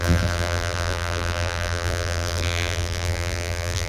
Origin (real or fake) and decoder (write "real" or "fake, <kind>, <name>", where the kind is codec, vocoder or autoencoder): fake, vocoder, BigVGAN v2